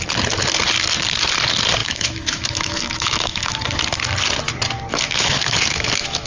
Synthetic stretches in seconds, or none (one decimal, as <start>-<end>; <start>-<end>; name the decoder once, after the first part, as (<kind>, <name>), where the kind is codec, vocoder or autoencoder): 1.8-3.6 (autoencoder, DAC-VAE); 4.9-6.3